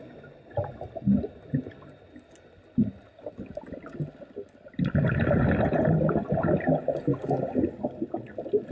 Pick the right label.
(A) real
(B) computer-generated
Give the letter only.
A